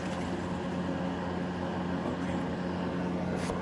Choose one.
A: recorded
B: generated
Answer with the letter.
A